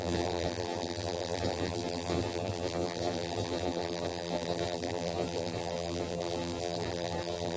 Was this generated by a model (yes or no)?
yes